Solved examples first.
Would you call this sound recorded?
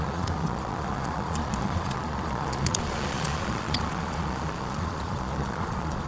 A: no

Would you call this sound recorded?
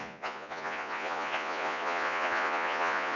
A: no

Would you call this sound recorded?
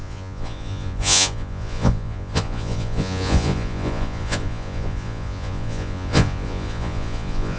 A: no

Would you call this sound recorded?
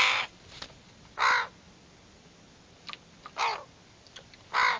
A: yes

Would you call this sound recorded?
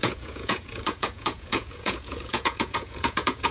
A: no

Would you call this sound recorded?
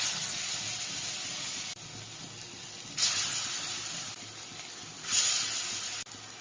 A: yes